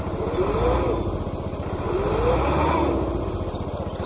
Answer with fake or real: real